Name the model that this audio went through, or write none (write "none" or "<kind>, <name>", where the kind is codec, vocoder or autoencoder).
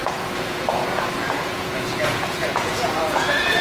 vocoder, Vocos